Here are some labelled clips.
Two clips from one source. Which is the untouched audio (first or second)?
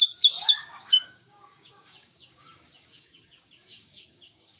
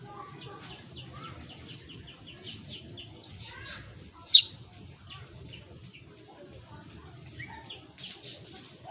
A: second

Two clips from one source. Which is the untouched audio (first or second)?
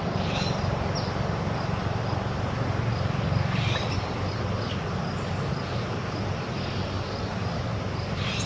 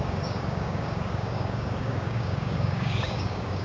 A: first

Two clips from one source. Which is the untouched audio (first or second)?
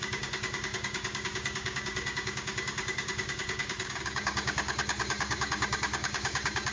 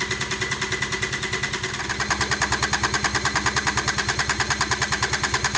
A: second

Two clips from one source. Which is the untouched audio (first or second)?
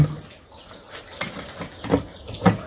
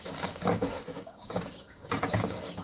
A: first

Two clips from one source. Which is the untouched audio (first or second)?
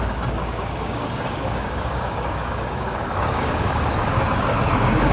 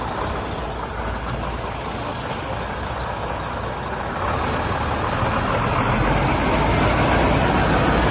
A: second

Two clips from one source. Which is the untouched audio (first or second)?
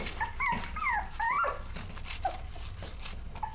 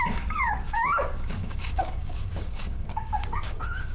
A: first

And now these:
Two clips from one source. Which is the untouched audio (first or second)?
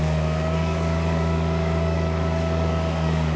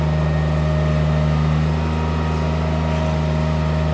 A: second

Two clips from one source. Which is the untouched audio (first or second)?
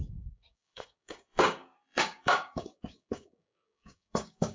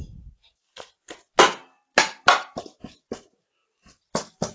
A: second